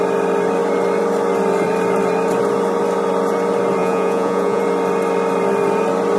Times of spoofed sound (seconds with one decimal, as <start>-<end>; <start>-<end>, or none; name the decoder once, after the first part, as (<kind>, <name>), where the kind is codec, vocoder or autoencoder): 3.8-4.6 (vocoder, Vocos)